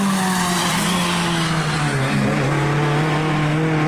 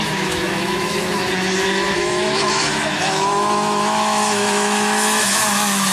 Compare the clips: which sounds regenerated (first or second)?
second